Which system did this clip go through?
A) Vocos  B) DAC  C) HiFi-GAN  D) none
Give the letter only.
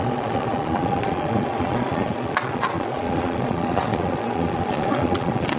A